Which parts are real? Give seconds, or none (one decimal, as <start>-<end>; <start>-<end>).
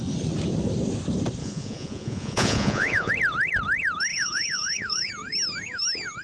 0.0-1.4; 3.1-4.1; 5.1-6.2